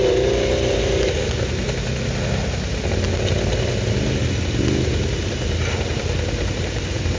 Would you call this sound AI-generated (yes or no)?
no